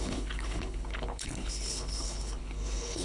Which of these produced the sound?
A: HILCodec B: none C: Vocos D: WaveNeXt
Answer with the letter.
A